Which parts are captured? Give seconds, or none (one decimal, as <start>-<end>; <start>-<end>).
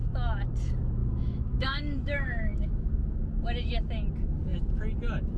0.0-1.0; 2.9-5.4